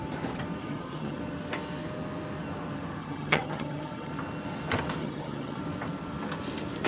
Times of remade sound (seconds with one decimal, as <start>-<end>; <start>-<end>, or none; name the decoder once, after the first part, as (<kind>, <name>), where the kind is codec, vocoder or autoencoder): 0.6-1.2 (vocoder, HiFi-GAN); 3.0-4.1; 5.0-5.6